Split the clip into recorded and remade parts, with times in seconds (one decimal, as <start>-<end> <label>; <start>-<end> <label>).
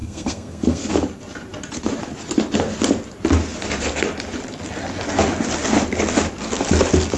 0.0-0.9 remade; 0.9-7.2 recorded